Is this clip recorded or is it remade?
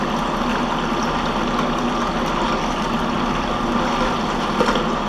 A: recorded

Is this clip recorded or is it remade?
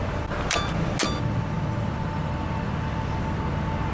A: recorded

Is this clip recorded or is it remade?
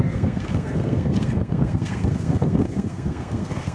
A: remade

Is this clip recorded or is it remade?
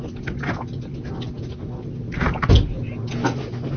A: recorded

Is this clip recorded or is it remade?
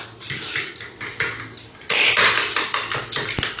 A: recorded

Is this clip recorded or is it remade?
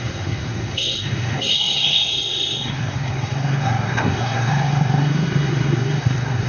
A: remade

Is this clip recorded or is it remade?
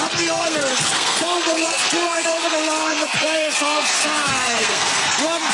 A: remade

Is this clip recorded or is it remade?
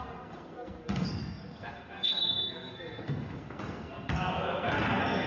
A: remade